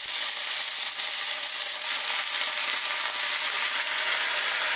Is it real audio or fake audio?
real